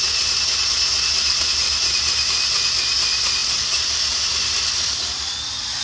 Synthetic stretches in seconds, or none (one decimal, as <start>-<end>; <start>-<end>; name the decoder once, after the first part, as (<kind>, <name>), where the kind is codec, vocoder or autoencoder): 3.4-4.2 (vocoder, BigVGAN v2)

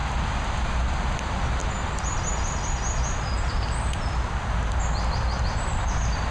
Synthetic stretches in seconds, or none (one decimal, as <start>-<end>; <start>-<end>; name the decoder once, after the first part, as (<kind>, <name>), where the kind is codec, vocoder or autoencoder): 1.0-1.6 (vocoder, BigVGAN v2); 5.4-6.3